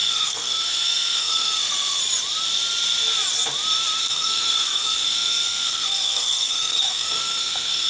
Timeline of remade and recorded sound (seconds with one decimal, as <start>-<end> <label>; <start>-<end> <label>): 0.0-2.0 remade; 2.0-4.0 recorded; 4.0-7.9 remade